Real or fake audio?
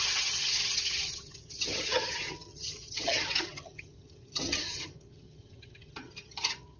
fake